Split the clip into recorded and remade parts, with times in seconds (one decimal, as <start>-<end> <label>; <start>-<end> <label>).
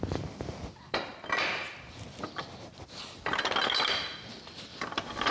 0.0-1.1 remade; 1.1-4.3 recorded; 4.3-5.3 remade